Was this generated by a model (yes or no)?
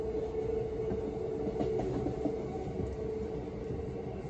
no